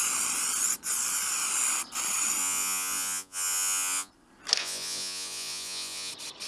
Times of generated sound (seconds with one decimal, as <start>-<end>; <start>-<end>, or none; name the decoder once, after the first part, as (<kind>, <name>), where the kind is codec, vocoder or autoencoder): 2.4-4.1 (vocoder, Vocos); 4.6-6.1